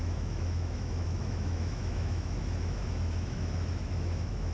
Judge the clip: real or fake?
fake